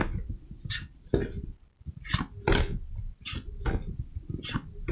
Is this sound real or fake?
real